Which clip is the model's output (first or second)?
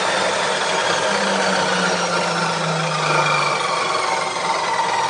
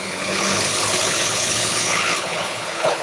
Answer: second